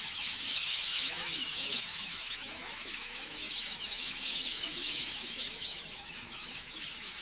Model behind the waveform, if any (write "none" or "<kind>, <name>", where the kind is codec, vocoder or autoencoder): autoencoder, DAC-VAE